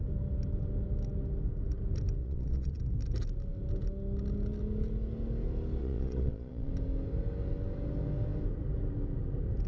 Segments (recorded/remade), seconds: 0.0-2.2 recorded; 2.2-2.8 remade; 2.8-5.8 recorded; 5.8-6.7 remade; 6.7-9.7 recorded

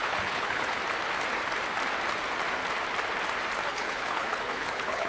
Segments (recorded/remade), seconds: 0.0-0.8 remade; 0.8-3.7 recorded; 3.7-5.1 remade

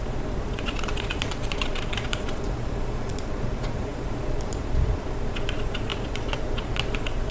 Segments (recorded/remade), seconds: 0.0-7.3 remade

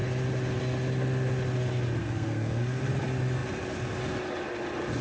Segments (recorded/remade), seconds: 0.0-2.0 recorded; 2.0-2.8 remade; 2.8-5.0 recorded